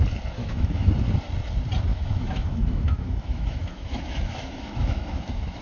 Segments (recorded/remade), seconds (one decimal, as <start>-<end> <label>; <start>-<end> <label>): 0.0-0.4 recorded; 0.4-0.9 remade; 0.9-1.9 recorded; 1.9-5.6 remade